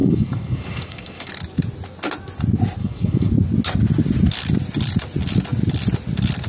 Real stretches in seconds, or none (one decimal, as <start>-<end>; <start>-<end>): 1.3-2.8; 3.3-6.5